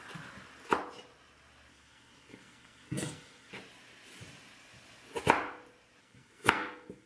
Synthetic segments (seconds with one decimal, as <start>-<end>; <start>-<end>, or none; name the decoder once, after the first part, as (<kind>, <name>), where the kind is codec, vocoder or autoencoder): 1.7-3.5 (codec, SNAC); 6.0-7.1